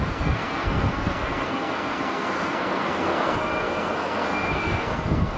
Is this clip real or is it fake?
fake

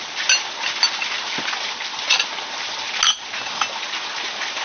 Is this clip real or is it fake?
real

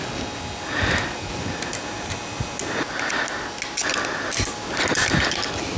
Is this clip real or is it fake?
real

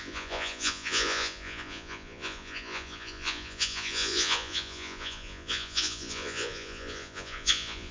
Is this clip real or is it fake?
fake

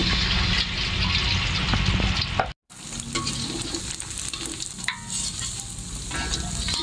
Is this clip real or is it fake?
real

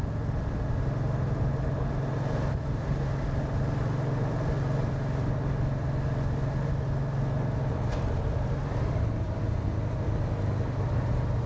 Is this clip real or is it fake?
real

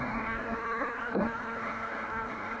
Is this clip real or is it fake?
fake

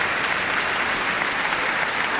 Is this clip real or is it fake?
real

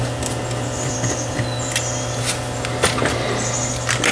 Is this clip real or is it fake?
real